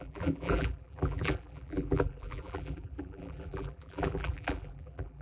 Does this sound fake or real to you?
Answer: fake